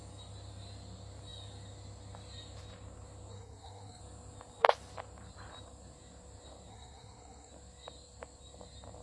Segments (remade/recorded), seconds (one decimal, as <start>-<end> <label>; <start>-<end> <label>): 0.0-3.3 recorded; 3.3-4.0 remade; 4.0-6.7 recorded; 6.7-7.5 remade; 7.5-9.0 recorded